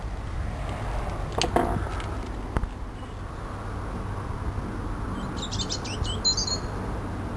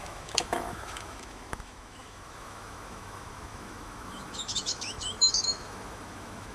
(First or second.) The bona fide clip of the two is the first